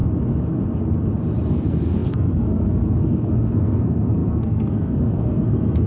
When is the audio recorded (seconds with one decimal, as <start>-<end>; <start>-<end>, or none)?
0.0-1.5